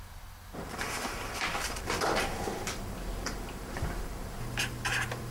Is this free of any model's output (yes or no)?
no